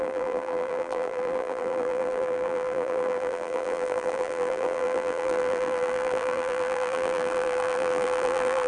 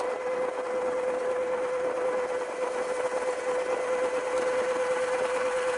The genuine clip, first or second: second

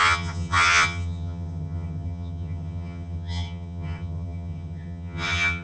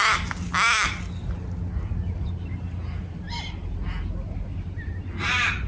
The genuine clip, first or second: second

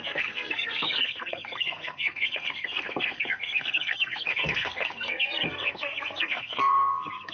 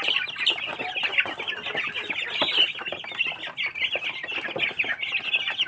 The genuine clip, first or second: second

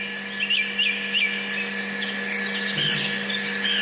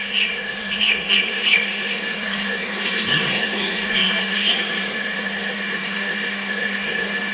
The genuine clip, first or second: first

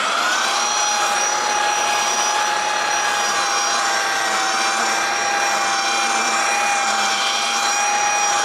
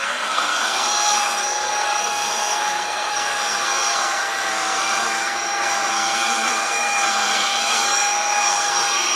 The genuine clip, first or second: first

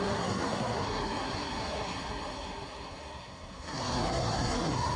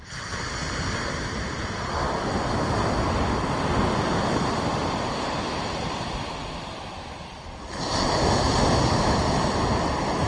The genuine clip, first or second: second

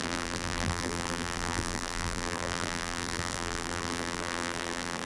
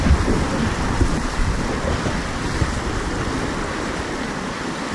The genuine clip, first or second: second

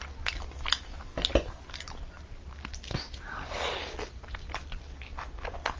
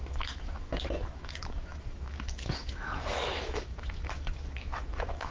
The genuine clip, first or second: first